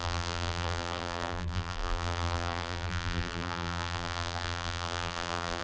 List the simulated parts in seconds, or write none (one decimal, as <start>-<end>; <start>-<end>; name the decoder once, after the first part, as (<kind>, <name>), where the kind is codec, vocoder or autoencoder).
0.0-5.6 (vocoder, BigVGAN v2)